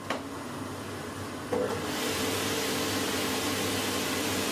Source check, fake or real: real